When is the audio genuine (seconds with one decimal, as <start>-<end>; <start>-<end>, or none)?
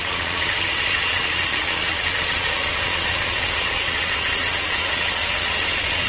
none